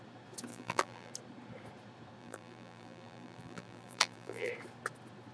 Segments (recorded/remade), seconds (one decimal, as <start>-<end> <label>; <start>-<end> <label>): 0.0-0.5 recorded; 0.5-1.1 remade; 1.1-2.2 recorded; 2.2-4.5 remade; 4.5-5.3 recorded